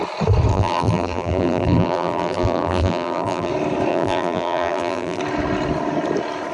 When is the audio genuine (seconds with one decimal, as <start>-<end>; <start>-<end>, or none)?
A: 0.0-0.5; 3.5-3.9; 5.2-6.5